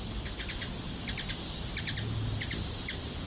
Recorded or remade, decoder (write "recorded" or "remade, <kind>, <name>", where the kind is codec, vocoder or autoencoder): recorded